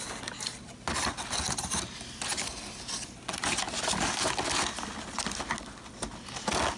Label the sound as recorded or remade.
recorded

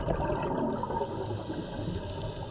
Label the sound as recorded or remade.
recorded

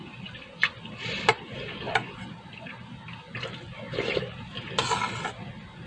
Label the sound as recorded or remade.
recorded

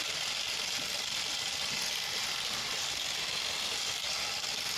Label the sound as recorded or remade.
recorded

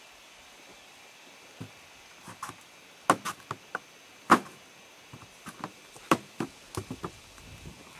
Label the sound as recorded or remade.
recorded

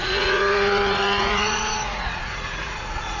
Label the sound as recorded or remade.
remade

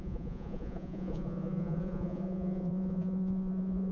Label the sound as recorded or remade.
remade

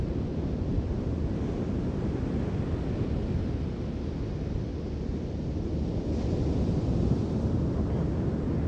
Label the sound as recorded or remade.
recorded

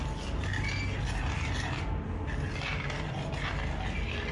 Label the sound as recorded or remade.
recorded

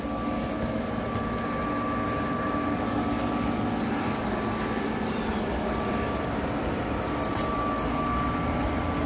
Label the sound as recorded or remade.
recorded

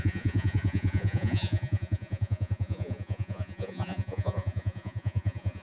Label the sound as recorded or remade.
remade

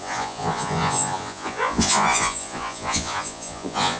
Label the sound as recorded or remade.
remade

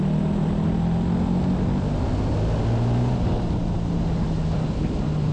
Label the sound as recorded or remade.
recorded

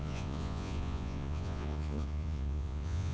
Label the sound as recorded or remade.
remade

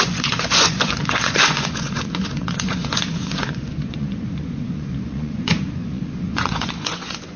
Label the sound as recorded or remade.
remade